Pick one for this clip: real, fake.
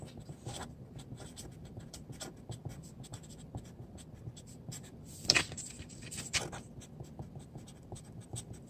fake